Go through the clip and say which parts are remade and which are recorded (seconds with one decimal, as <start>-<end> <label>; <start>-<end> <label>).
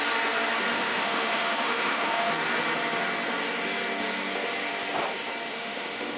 0.0-0.7 recorded; 0.7-2.3 remade; 2.3-5.5 recorded; 5.5-6.2 remade